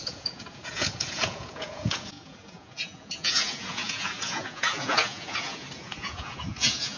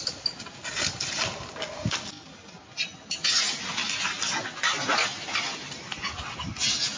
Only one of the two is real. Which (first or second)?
second